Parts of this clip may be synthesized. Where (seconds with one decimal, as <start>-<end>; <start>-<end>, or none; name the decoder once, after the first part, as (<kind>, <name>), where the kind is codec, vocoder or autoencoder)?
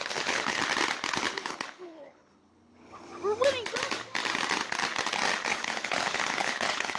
0.0-0.6 (codec, HILCodec); 1.1-3.1; 5.5-7.0